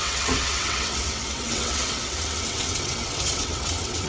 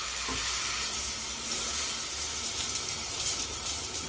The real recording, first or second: second